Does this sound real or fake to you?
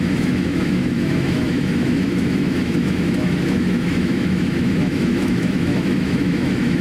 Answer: fake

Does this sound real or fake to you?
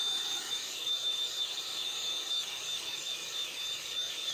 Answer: fake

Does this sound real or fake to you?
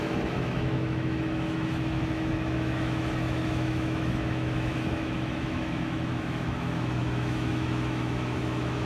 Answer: fake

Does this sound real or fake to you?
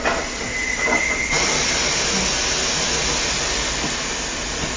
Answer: real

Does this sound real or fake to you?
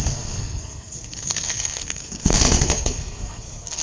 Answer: fake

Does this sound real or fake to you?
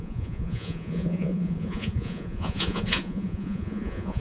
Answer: fake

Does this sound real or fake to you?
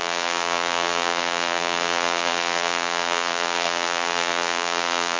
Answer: fake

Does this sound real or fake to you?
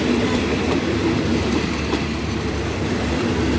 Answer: fake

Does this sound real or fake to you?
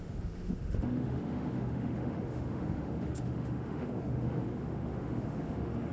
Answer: fake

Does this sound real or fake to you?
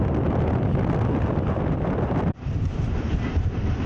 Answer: real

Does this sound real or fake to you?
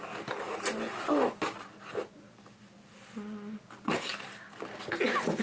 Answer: real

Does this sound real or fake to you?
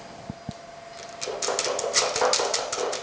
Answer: real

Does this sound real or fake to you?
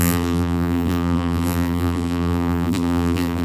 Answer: fake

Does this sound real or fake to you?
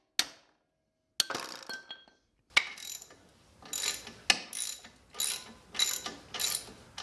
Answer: real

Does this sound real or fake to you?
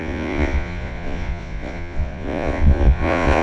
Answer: fake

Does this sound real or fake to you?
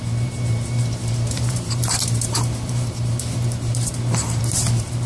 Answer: fake